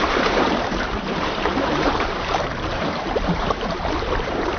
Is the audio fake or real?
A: fake